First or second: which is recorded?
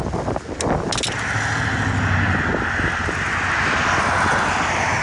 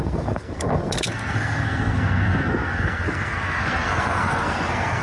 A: first